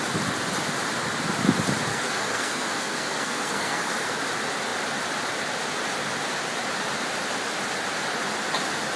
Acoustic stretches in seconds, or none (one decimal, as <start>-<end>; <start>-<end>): 0.0-1.9; 4.2-9.0